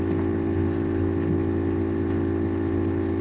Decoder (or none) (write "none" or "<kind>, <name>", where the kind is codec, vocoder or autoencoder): none